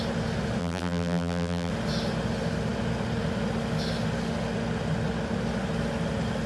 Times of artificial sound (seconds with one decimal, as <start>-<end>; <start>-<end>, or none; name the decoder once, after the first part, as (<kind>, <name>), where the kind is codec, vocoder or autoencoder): 0.6-1.7 (vocoder, BigVGAN v2)